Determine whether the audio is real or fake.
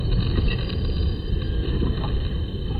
real